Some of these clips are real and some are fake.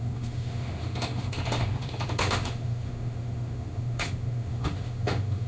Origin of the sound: fake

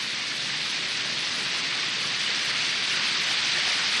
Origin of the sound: real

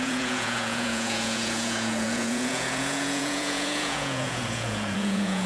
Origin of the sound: fake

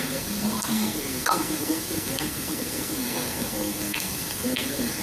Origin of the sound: fake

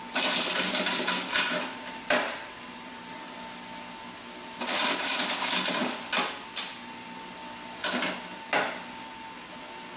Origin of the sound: real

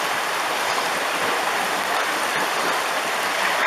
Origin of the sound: real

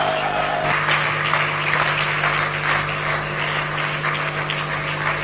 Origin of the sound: real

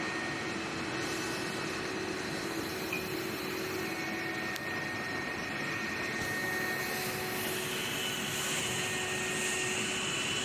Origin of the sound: real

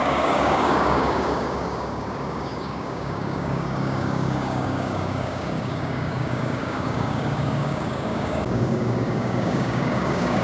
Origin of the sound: fake